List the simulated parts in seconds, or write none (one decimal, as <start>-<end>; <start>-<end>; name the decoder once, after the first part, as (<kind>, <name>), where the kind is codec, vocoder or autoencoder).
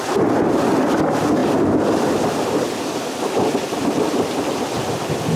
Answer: 1.4-4.6 (vocoder, BigVGAN v2)